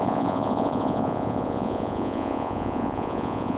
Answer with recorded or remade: remade